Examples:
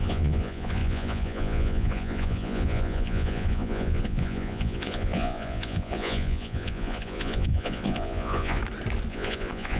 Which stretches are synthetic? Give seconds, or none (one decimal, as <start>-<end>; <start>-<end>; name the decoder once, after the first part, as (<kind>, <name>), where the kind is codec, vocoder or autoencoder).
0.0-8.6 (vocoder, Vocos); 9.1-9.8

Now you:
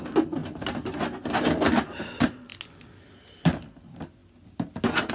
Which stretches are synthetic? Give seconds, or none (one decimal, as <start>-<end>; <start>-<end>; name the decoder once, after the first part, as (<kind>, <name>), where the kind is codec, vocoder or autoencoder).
none

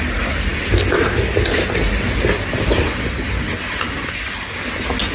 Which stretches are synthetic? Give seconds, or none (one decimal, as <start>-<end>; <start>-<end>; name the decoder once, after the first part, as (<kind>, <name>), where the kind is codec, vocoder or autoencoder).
none